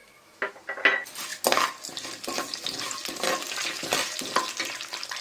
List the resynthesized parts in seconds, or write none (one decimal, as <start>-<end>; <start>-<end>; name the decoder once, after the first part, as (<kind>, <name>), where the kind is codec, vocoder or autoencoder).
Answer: 0.0-0.5 (autoencoder, DAC-VAE)